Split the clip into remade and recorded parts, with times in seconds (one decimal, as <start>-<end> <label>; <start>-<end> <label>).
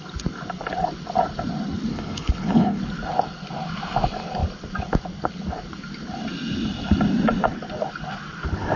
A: 0.0-1.9 recorded; 1.9-2.8 remade; 2.8-8.8 recorded